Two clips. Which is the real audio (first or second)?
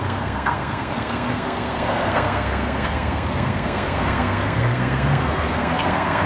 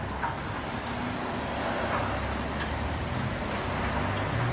second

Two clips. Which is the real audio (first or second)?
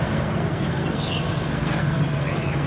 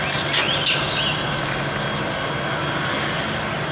second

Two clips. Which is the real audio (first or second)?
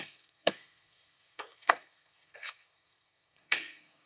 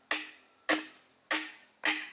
second